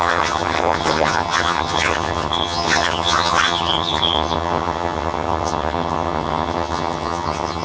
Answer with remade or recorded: remade